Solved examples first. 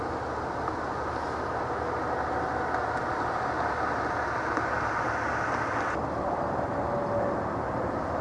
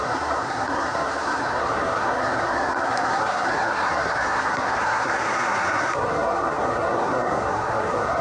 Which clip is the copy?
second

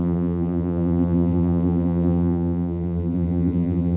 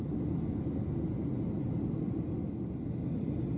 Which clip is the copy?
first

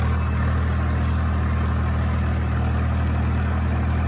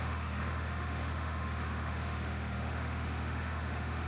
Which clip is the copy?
second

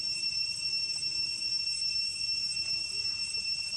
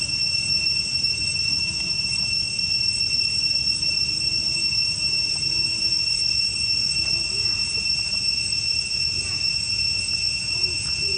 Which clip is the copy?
second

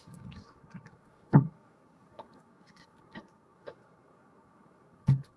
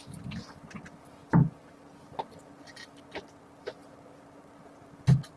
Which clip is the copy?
first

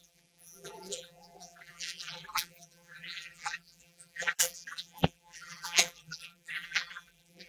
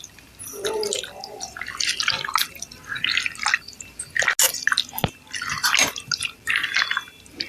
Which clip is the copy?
first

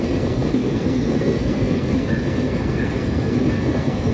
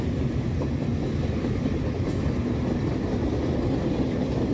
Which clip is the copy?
first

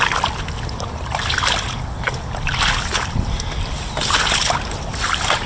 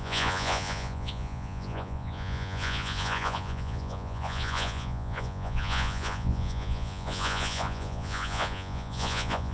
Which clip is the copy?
second